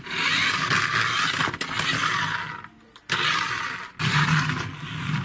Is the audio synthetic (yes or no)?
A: no